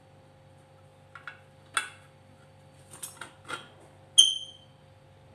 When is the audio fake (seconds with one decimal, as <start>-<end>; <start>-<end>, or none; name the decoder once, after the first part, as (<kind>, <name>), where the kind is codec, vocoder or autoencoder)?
none